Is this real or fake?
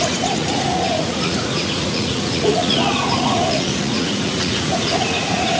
fake